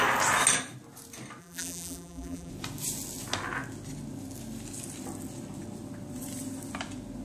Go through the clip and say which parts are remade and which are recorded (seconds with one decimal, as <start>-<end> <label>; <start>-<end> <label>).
0.0-1.4 recorded; 1.4-2.5 remade; 2.5-7.2 recorded